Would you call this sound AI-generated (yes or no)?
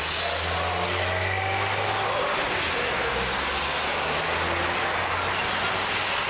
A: no